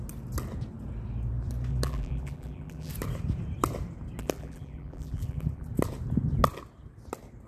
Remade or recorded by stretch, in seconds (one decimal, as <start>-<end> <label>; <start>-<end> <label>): 0.0-1.7 recorded; 1.7-2.9 remade; 2.9-4.2 recorded; 4.2-5.7 remade; 5.7-7.5 recorded